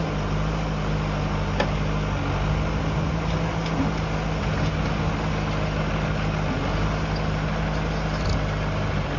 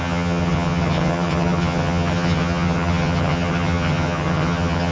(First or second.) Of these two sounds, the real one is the first